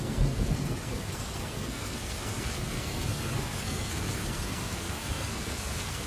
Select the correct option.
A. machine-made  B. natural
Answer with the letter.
A